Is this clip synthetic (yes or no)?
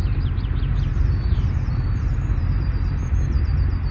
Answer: yes